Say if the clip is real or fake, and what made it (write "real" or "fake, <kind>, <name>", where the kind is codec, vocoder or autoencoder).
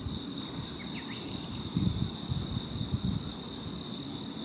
real